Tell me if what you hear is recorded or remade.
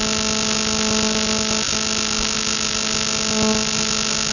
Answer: recorded